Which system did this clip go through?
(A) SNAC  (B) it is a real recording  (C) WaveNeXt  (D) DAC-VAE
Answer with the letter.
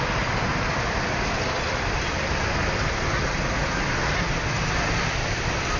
B